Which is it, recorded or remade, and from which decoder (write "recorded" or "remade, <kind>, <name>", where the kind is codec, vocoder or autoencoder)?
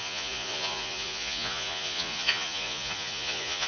remade, vocoder, Vocos